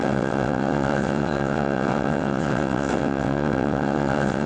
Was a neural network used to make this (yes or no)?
yes